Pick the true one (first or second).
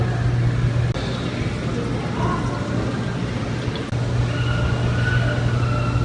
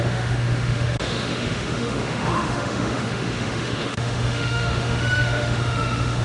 first